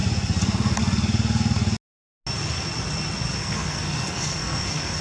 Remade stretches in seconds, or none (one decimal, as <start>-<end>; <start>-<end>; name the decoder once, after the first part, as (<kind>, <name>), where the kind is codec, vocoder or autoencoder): 3.4-5.0 (codec, SNAC)